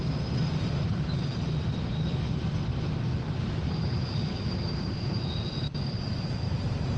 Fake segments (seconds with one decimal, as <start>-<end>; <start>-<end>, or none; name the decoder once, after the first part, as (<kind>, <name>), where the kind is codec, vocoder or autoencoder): 0.0-1.3 (vocoder, BigVGAN v2); 4.6-7.0